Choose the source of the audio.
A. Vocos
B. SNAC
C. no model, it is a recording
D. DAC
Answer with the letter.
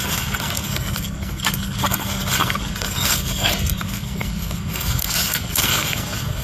B